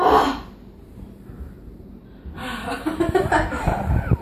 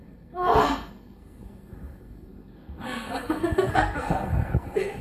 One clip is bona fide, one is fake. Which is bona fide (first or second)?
first